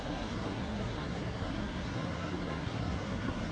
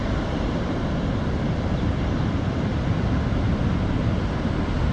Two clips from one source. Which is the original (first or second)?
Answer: second